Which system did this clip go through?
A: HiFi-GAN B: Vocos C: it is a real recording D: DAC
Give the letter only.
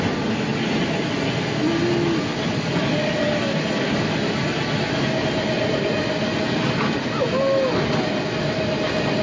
C